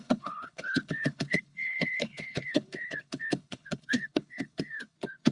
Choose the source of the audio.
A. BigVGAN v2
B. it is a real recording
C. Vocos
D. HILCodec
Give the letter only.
D